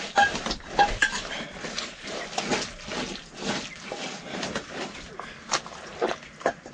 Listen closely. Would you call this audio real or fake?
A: real